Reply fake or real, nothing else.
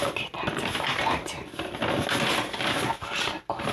real